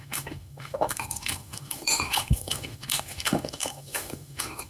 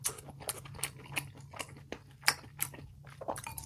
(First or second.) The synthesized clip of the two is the first